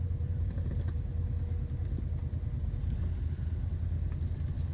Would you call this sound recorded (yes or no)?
yes